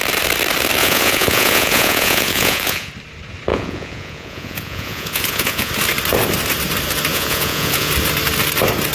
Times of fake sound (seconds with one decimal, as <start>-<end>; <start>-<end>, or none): 0.8-2.9; 3.5-5.7; 7.1-7.9